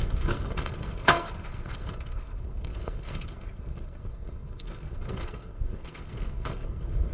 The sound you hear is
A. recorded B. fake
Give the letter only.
B